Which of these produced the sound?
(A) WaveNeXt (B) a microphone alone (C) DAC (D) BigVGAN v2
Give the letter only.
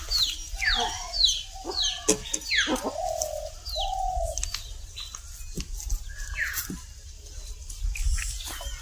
B